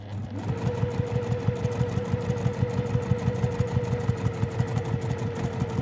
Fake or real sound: real